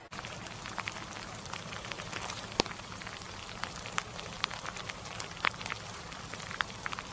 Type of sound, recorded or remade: remade